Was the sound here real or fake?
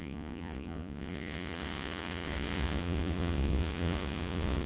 fake